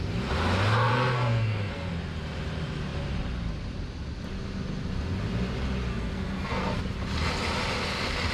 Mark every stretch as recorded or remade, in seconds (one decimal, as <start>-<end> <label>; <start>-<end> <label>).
0.0-0.9 recorded; 0.9-1.9 remade; 1.9-5.9 recorded; 5.9-6.8 remade; 6.8-8.3 recorded